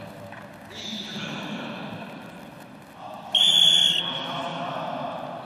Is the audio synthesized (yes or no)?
no